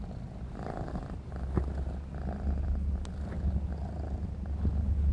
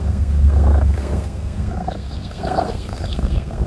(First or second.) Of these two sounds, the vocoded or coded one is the second